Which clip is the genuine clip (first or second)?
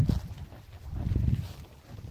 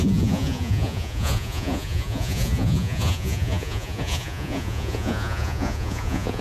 first